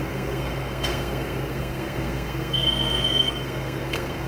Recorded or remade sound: remade